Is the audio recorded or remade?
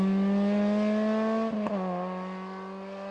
recorded